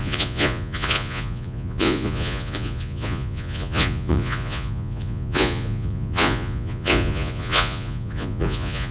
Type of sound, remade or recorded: remade